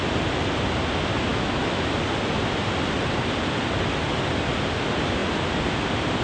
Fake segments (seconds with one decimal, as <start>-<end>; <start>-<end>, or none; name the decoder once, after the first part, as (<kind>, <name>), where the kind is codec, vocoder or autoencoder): 1.3-1.9 (autoencoder, DAC-VAE)